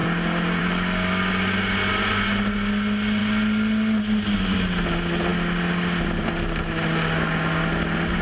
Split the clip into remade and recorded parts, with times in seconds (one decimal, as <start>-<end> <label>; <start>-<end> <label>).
0.0-8.2 recorded